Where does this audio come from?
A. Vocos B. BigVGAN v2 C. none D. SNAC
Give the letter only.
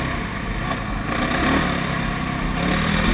C